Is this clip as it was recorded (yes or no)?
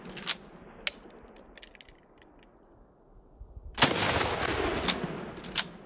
yes